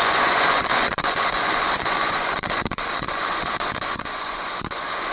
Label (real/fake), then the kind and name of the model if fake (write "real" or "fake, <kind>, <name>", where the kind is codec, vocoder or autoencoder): fake, vocoder, Vocos